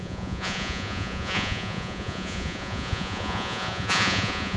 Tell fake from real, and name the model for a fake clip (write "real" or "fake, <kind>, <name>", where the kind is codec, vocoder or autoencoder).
fake, vocoder, Vocos